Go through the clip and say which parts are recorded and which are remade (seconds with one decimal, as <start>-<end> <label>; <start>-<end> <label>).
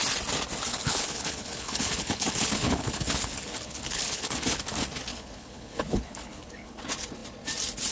0.0-0.7 recorded; 0.7-4.6 remade; 4.6-5.1 recorded; 5.1-6.8 remade; 6.8-7.9 recorded